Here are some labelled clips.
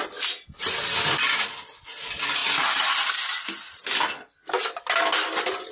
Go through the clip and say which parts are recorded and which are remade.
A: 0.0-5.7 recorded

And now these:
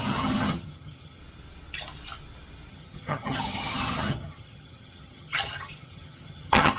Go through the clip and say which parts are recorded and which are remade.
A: 0.0-1.2 remade; 1.2-2.7 recorded; 2.7-6.8 remade

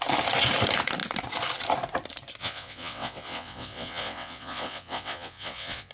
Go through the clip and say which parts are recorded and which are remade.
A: 0.0-2.4 recorded; 2.4-5.9 remade

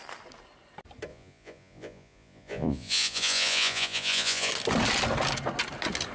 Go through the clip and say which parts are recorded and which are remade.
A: 0.0-1.1 recorded; 1.1-4.5 remade; 4.5-6.1 recorded

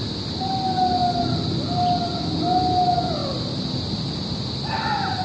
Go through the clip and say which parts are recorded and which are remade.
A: 0.0-3.2 recorded; 3.2-4.6 remade; 4.6-5.2 recorded

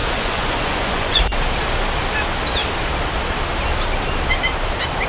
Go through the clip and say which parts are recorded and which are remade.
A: 0.0-1.2 remade; 1.2-5.1 recorded

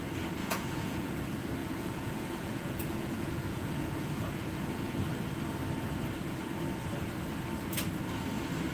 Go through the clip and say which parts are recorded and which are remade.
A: 0.0-0.4 recorded; 0.4-1.2 remade; 1.2-1.6 recorded; 1.6-5.0 remade; 5.0-8.7 recorded

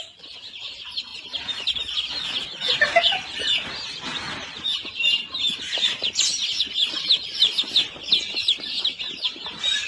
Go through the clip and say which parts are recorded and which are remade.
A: 0.0-9.9 recorded